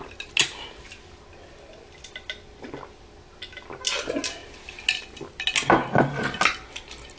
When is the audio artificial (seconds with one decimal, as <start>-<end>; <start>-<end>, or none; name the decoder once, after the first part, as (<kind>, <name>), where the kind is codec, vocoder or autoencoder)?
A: none